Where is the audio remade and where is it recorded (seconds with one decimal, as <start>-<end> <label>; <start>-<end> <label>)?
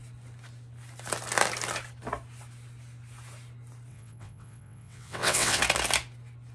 0.0-3.9 recorded; 3.9-5.6 remade; 5.6-6.5 recorded